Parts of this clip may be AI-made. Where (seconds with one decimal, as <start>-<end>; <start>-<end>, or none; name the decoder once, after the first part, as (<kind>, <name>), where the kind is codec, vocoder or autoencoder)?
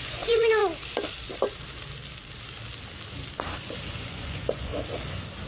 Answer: 0.0-0.6 (vocoder, Vocos); 3.9-4.7